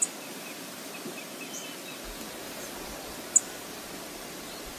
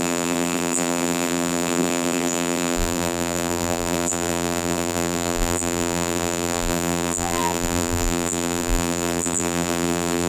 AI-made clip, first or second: second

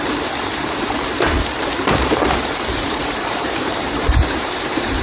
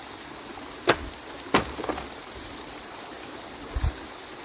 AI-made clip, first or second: first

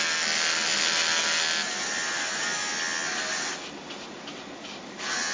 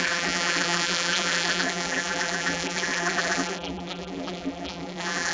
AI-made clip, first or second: second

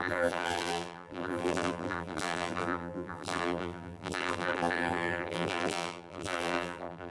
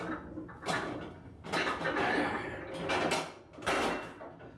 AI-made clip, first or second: first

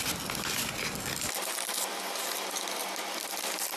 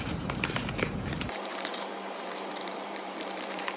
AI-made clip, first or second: second